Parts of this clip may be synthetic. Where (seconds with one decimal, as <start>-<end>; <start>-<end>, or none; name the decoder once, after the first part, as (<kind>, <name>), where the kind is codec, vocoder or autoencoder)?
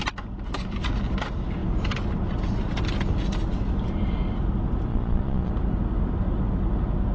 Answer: 4.9-5.5 (vocoder, Vocos)